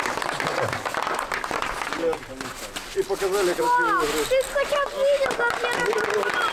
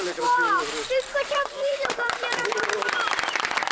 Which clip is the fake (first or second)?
second